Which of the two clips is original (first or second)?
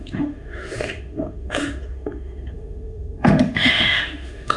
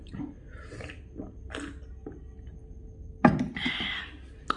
second